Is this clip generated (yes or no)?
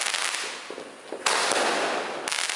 no